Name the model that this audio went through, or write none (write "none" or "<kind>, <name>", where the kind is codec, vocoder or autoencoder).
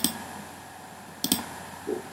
none